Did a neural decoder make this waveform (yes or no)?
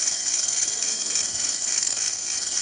yes